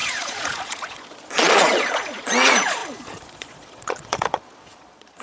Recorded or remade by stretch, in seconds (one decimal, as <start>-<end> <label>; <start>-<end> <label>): 0.0-5.2 remade